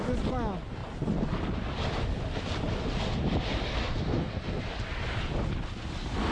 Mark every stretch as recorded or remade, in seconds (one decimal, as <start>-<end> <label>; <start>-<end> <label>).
0.0-3.8 recorded; 3.8-4.6 remade; 4.6-6.3 recorded